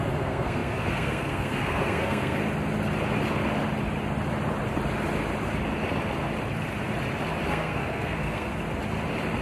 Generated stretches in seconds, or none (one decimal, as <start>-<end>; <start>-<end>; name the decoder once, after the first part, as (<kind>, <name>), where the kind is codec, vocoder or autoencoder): 0.0-2.4 (codec, SNAC); 7.5-8.5